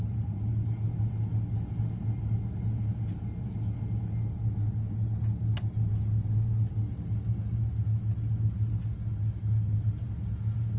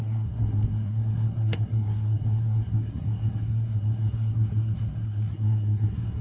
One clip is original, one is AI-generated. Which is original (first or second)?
first